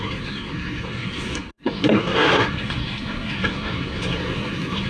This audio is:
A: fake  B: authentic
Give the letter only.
A